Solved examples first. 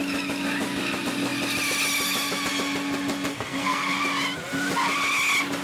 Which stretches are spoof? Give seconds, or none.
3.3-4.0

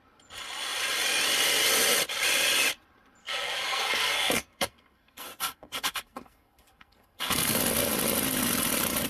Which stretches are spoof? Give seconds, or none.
3.2-7.6

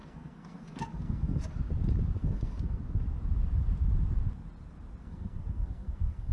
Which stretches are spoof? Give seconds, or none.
0.0-1.4; 2.2-2.8; 5.0-6.3

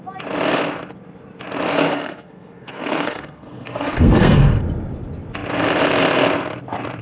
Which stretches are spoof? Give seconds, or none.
1.7-4.6

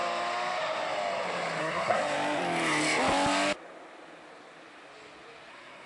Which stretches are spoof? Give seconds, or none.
1.6-2.0; 5.5-5.9